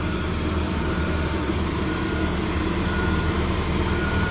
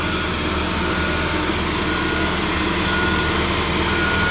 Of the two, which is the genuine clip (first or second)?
second